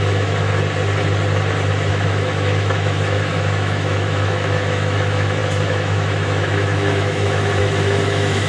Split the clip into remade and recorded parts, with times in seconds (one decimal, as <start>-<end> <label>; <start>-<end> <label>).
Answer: 0.0-0.5 remade; 0.5-1.9 recorded; 1.9-8.5 remade